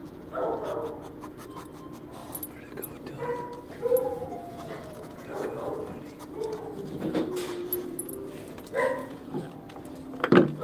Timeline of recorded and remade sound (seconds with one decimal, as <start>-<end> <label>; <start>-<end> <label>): 0.0-0.5 remade; 0.5-4.0 recorded; 4.0-5.8 remade; 5.8-9.0 recorded; 9.0-9.5 remade; 9.5-10.6 recorded